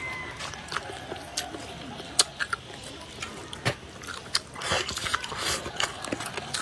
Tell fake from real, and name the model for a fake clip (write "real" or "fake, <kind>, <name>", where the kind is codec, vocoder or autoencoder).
real